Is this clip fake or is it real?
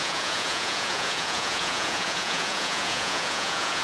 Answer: fake